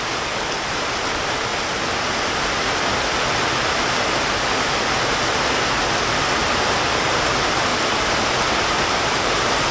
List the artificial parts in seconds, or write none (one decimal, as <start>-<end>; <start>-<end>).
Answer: 0.0-1.5; 6.0-7.7; 8.9-9.7